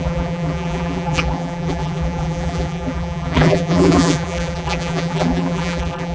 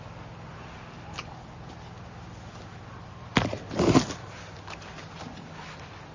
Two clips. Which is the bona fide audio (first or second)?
second